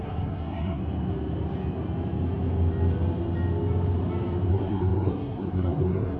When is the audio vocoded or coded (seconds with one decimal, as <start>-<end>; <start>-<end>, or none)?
0.0-0.8; 4.5-6.2